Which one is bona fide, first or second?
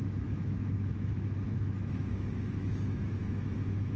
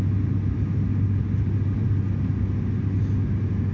second